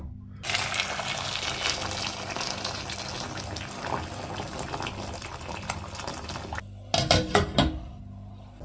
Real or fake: real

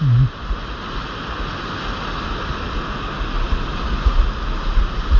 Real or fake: real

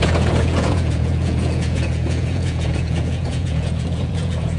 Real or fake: fake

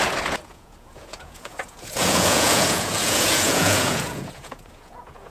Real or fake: fake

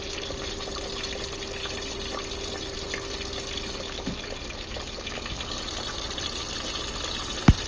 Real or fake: real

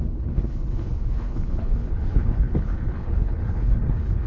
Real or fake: fake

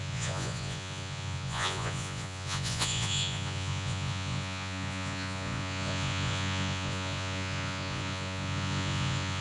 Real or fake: fake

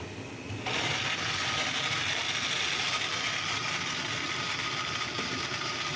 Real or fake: real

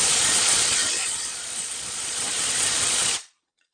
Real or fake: fake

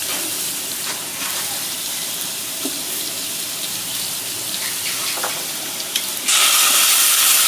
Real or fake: fake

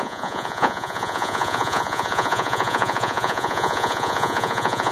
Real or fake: fake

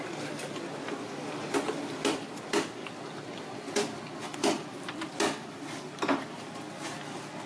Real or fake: real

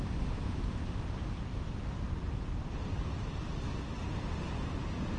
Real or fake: real